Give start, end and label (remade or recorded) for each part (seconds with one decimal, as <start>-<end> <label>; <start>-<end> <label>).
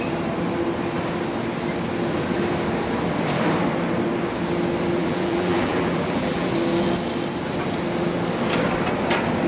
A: 0.0-5.0 recorded; 5.0-6.5 remade; 6.5-9.5 recorded